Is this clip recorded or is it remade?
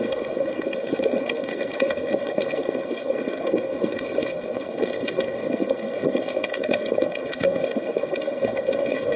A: remade